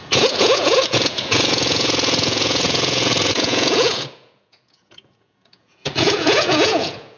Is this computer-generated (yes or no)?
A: yes